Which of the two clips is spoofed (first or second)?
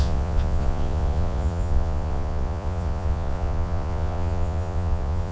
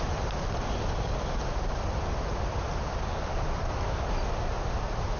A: first